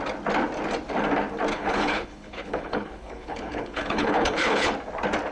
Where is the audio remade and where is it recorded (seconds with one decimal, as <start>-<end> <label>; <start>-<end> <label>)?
0.0-1.5 recorded; 1.5-4.7 remade; 4.7-5.3 recorded